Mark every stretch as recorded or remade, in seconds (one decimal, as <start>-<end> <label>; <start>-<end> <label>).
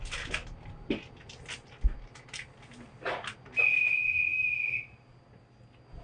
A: 0.0-6.0 recorded